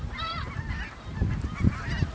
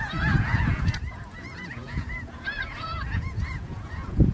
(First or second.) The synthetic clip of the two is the second